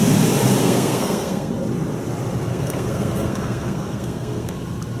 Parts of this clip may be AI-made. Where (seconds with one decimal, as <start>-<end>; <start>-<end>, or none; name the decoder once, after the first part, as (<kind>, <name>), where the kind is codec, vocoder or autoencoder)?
0.6-1.5 (codec, SNAC); 2.5-4.5